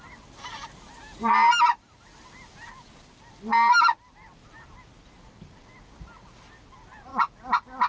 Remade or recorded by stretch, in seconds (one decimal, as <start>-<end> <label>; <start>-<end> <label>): 0.0-7.9 recorded